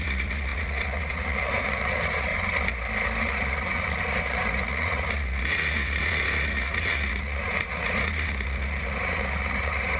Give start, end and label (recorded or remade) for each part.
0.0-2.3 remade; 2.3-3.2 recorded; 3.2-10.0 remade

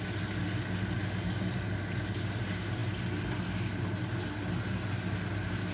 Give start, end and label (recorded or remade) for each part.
0.0-5.7 recorded

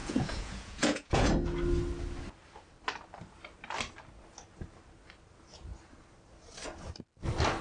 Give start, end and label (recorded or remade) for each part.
0.0-1.3 remade; 1.3-7.6 recorded

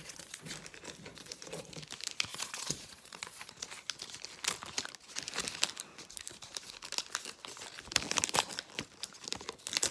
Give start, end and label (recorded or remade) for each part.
0.0-0.5 remade; 0.5-1.1 recorded; 1.1-1.7 remade; 1.7-2.3 recorded; 2.3-3.5 remade; 3.5-9.9 recorded

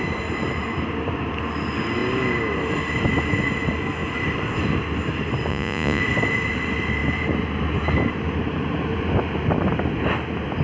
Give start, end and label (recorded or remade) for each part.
0.0-5.5 recorded; 5.5-6.0 remade; 6.0-10.6 recorded

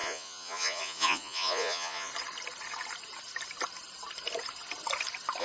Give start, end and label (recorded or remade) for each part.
0.0-2.1 remade; 2.1-5.4 recorded

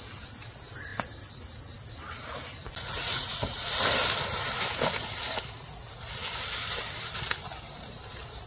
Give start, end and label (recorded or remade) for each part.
0.0-2.8 recorded; 2.8-3.7 remade; 3.7-8.5 recorded